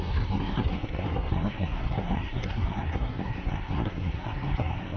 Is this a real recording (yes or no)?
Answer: no